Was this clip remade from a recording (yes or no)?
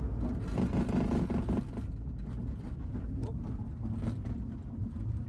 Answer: no